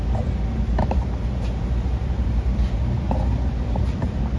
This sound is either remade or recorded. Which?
remade